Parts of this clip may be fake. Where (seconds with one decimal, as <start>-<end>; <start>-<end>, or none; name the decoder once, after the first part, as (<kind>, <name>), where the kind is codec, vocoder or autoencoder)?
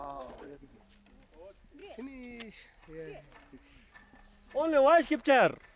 0.0-0.8 (codec, SNAC)